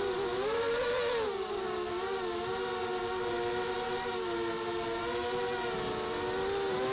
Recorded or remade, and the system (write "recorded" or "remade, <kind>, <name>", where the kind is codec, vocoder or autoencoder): recorded